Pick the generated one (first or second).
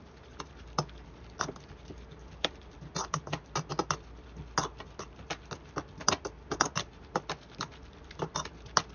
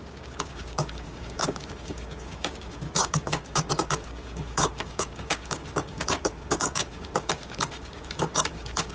second